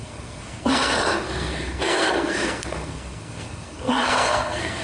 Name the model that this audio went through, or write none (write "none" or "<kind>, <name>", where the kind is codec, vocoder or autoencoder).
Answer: codec, SNAC